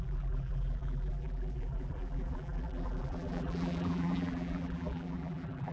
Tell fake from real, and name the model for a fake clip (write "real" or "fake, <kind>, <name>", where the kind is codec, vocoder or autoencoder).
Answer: fake, vocoder, BigVGAN v2